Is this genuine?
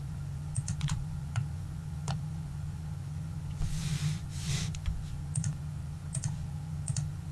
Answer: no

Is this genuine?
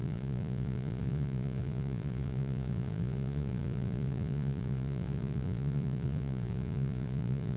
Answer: no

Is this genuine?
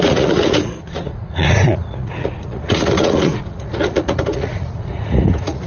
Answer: no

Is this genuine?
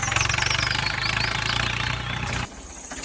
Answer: yes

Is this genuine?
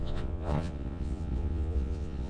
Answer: no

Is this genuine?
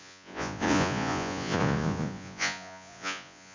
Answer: no